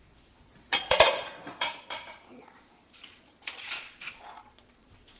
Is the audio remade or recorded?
remade